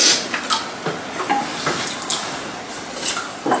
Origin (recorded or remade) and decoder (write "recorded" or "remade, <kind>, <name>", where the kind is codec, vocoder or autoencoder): recorded